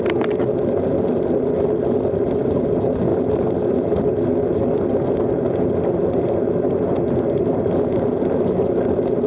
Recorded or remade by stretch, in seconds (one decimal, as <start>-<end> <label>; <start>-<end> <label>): 0.0-9.3 recorded